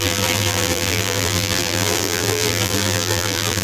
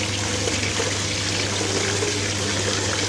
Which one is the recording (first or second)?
second